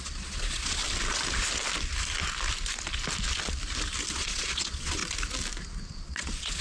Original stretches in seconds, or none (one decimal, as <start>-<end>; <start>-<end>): 0.8-4.1; 5.0-5.9